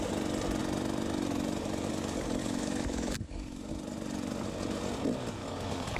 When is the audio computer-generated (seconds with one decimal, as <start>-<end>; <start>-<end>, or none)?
2.4-3.7; 5.4-6.0